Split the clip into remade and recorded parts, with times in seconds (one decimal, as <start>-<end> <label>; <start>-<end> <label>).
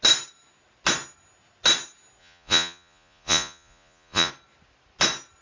0.0-2.2 recorded; 2.2-4.3 remade; 4.3-5.4 recorded